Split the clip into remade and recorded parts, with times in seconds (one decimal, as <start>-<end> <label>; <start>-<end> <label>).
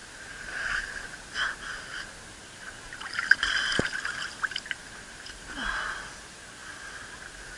0.0-0.8 remade; 0.8-2.4 recorded; 2.4-5.7 remade; 5.7-7.6 recorded